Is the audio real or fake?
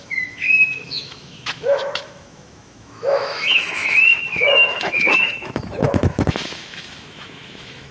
fake